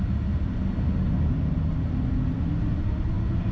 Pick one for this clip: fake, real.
real